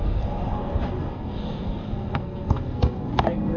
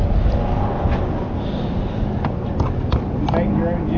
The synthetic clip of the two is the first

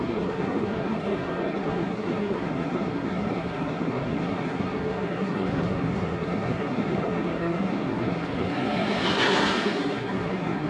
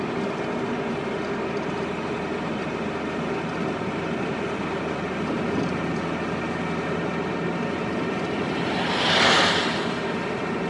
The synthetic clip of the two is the first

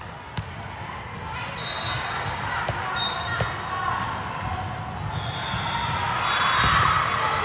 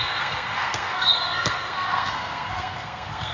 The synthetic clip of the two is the second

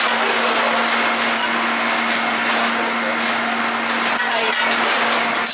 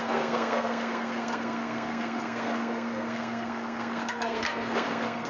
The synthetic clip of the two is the second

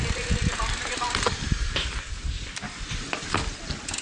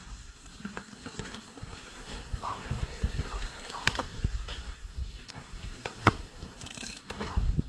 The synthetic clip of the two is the second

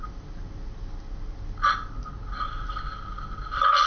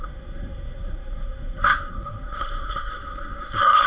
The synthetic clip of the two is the second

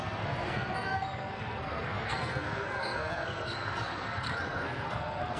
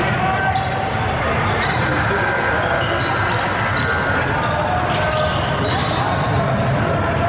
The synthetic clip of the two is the first